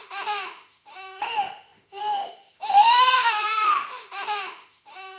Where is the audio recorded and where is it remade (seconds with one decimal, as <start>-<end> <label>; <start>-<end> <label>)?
0.0-5.2 remade